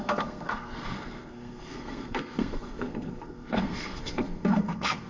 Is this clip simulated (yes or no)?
yes